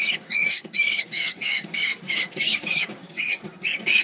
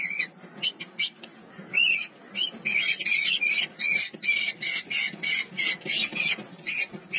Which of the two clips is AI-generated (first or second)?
first